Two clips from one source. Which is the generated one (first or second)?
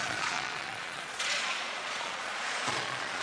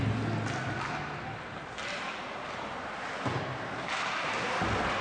first